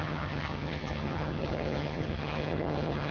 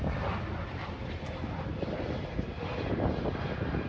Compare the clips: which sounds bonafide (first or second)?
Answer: second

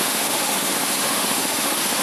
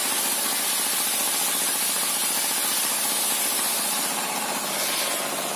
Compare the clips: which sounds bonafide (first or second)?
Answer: second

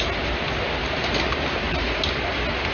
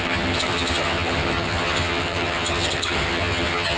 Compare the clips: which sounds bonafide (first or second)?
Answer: first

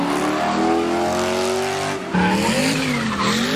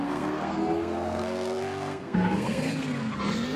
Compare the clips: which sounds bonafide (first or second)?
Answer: first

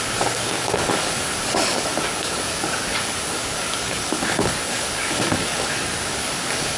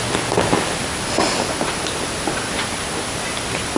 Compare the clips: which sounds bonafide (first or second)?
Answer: second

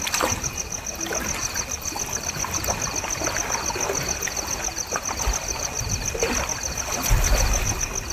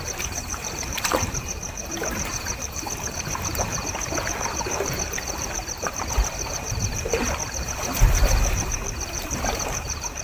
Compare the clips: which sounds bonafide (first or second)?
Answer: first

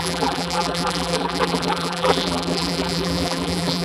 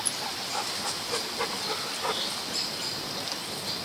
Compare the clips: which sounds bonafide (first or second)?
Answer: second